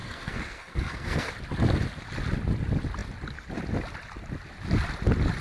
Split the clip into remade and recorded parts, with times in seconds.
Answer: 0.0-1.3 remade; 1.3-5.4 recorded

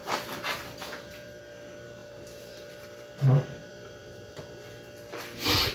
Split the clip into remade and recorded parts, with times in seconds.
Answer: 0.0-1.4 remade; 1.4-2.0 recorded; 2.0-2.7 remade; 2.7-3.6 recorded; 3.6-4.4 remade; 4.4-5.7 recorded

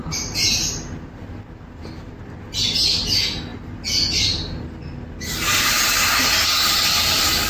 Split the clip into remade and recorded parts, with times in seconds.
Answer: 0.0-7.5 recorded

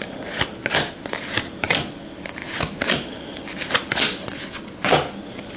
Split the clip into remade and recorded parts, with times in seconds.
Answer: 0.0-2.4 recorded; 2.4-3.4 remade; 3.4-5.6 recorded